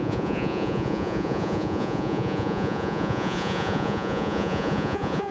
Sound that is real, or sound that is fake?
fake